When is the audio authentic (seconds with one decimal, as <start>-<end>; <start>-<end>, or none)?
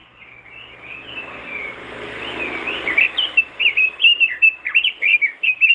0.0-5.1